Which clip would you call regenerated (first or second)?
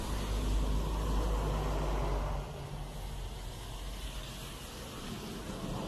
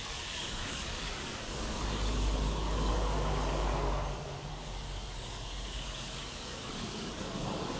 second